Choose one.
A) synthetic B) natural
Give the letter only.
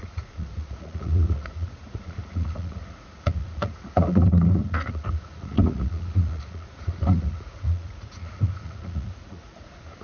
A